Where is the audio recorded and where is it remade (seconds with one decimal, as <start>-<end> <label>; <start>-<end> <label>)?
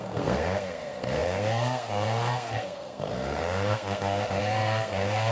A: 0.0-5.3 remade